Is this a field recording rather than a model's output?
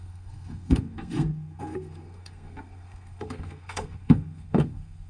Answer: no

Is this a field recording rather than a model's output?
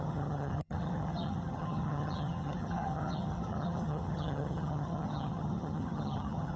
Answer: no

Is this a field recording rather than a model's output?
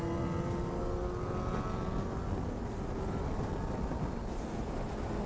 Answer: yes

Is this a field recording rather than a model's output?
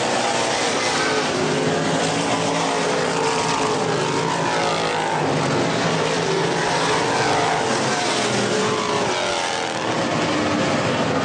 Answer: yes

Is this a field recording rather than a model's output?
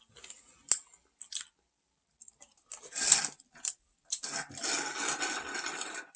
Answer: yes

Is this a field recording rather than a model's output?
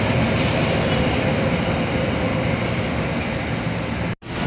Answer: yes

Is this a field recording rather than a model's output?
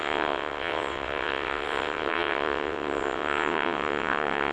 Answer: no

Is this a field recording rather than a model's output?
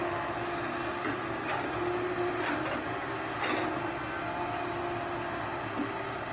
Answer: yes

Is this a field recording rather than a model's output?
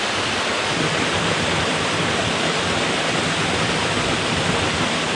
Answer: yes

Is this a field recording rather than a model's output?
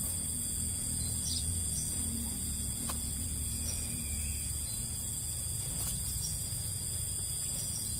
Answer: no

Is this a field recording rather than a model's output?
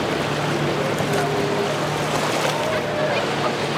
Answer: yes